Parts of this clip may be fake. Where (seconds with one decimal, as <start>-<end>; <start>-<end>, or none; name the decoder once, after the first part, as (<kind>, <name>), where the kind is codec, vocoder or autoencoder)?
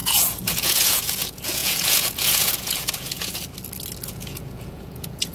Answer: 0.0-3.4 (vocoder, Vocos); 4.1-5.3